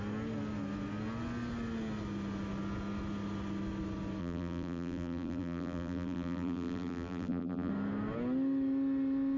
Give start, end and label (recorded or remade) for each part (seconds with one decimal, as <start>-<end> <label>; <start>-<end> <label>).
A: 0.0-4.2 recorded; 4.2-7.7 remade; 7.7-9.4 recorded